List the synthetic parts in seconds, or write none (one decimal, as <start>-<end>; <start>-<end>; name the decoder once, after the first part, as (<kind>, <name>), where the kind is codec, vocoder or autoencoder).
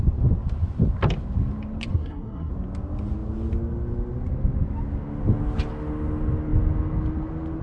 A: 1.9-2.5 (codec, SNAC)